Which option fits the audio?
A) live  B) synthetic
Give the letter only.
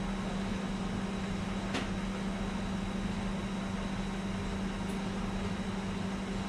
A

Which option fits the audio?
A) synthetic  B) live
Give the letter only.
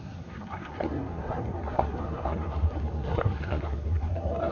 A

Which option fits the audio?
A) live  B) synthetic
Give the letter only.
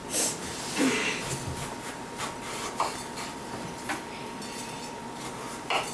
A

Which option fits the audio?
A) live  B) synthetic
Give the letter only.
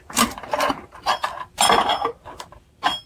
A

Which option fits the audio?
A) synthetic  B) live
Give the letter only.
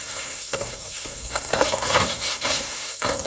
A